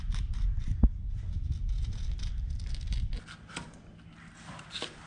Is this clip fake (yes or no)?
no